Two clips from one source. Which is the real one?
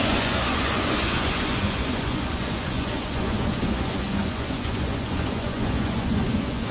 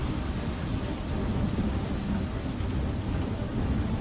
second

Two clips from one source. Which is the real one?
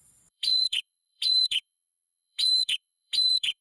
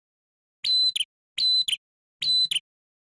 second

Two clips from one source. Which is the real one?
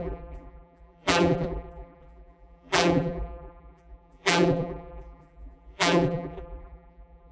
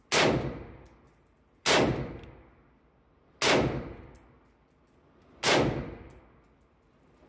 second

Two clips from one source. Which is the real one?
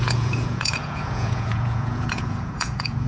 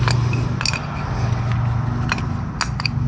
second